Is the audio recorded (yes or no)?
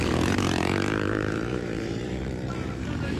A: no